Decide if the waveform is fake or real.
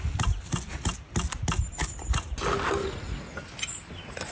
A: real